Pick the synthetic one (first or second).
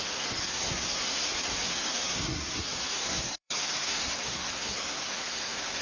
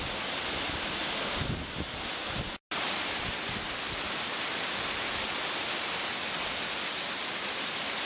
first